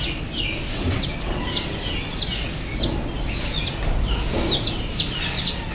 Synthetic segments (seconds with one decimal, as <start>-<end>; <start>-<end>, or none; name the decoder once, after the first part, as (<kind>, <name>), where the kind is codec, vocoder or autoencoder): 0.7-1.4 (vocoder, WaveNeXt)